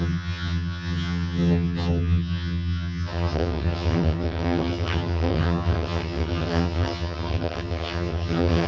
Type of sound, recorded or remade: remade